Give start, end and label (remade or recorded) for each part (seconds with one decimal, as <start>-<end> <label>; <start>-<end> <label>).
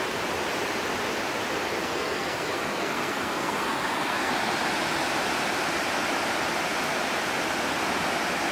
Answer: 0.0-1.8 recorded; 1.8-4.3 remade; 4.3-8.5 recorded